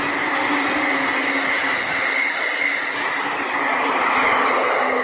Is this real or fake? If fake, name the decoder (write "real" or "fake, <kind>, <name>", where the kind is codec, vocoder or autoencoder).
real